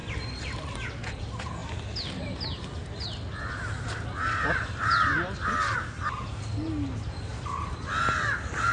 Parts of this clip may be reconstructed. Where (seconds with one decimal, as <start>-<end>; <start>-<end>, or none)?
none